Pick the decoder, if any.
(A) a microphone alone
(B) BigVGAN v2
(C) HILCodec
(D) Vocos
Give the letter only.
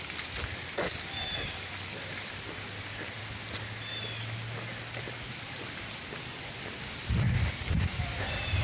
A